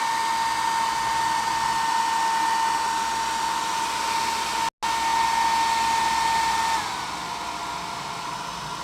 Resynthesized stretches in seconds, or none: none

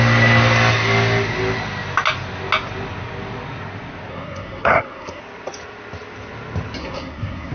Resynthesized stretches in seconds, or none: 4.1-5.2 (codec, SNAC); 6.8-7.5

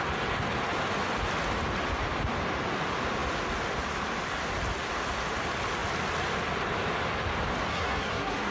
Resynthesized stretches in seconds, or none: 7.7-8.5 (codec, SNAC)

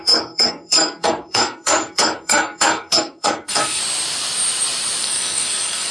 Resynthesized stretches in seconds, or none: 0.0-3.8 (codec, SNAC); 5.0-5.9

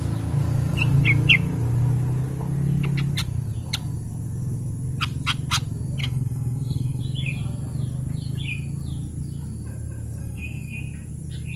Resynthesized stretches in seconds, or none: 6.0-7.0 (codec, SNAC); 10.2-10.8

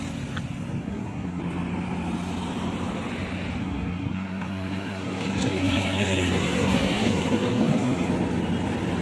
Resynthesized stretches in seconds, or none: 0.8-1.4 (codec, SNAC); 3.6-8.1

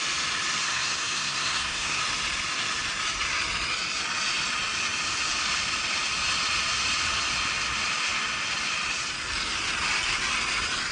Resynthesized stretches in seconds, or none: 0.6-2.0 (codec, SNAC)